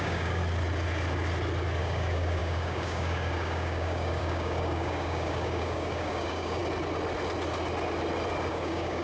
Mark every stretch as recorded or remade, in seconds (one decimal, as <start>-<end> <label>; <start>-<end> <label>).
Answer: 0.0-0.4 remade; 0.4-1.8 recorded; 1.8-6.6 remade; 6.6-8.5 recorded; 8.5-9.0 remade